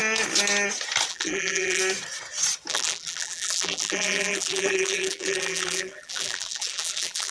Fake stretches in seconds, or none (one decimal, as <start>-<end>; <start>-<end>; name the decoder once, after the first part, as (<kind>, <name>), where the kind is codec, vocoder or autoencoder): 1.1-1.8 (vocoder, BigVGAN v2); 2.7-7.3